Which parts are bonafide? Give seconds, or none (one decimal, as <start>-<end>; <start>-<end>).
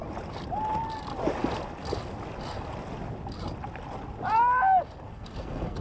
0.0-5.1